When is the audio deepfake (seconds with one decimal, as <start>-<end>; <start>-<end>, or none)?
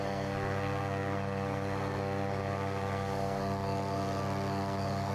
0.0-5.1